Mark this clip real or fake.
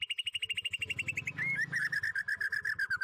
real